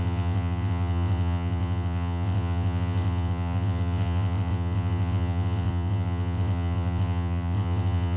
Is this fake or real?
fake